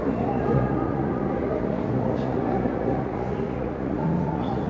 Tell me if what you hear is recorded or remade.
remade